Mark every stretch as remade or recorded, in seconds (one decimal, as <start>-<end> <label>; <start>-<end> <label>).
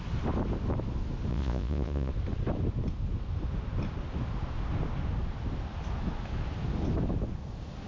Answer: 0.0-1.3 recorded; 1.3-2.1 remade; 2.1-7.9 recorded